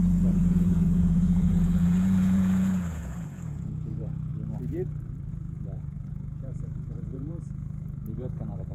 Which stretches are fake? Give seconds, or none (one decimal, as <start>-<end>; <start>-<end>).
0.0-4.3; 5.3-8.7